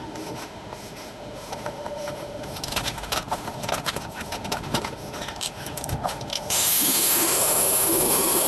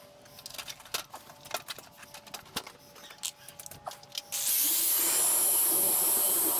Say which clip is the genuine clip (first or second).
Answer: second